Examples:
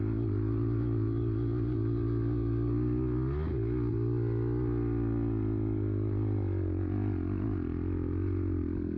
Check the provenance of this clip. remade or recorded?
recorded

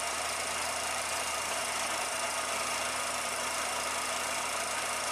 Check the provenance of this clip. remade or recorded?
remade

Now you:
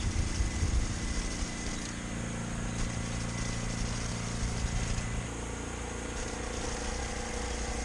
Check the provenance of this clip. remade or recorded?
recorded